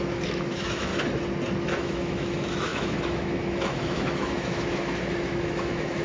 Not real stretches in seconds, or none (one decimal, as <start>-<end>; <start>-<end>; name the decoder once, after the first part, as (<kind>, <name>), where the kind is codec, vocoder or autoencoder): 0.0-0.9 (autoencoder, DAC-VAE); 1.6-6.0